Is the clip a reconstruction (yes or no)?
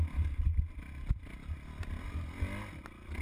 no